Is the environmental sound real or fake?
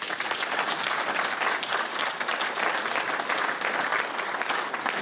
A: real